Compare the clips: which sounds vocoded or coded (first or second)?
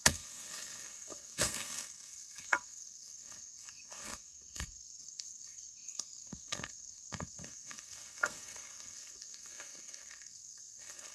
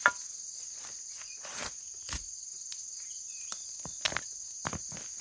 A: first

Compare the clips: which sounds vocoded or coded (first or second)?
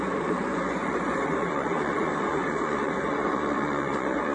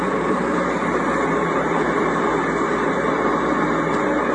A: first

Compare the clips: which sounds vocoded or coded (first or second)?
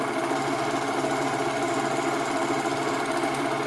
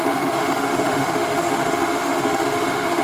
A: second